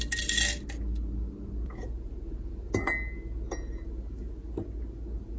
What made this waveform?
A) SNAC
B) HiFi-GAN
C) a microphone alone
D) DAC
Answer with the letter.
C